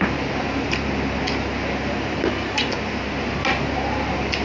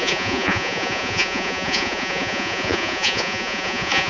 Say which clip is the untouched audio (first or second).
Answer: first